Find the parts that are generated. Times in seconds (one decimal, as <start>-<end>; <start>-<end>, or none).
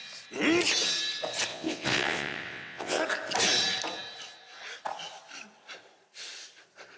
1.5-3.0